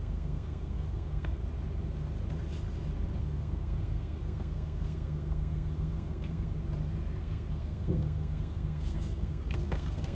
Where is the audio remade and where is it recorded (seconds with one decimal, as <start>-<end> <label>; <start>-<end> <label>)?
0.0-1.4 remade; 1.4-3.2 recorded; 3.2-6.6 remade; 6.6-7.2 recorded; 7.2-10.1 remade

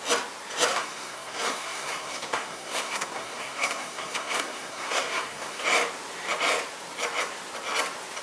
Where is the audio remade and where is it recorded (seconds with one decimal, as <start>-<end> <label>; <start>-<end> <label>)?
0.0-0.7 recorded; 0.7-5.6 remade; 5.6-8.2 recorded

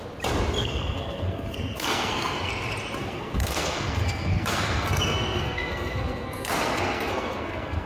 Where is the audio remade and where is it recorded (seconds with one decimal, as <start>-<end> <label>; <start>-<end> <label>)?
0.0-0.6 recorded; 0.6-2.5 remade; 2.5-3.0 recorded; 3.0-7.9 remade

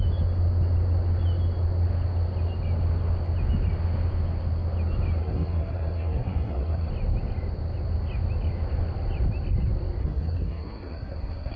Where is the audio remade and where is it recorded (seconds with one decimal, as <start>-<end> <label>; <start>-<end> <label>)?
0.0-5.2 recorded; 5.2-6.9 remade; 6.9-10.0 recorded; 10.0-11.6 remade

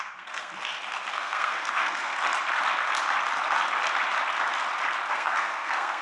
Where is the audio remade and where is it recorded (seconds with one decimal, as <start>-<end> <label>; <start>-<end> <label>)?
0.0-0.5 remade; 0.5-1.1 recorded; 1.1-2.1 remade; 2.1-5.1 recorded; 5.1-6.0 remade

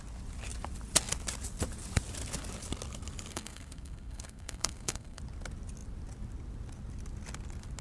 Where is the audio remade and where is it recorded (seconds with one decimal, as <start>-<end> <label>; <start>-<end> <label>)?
0.0-3.3 recorded; 3.3-5.2 remade; 5.2-7.8 recorded

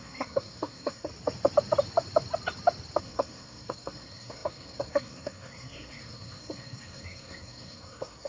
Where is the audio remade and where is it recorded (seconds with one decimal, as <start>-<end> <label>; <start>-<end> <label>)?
0.0-1.1 remade; 1.1-3.0 recorded; 3.0-8.3 remade

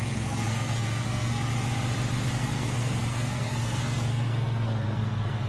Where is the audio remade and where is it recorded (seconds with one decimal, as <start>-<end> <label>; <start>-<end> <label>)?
0.0-1.5 remade; 1.5-2.3 recorded; 2.3-5.5 remade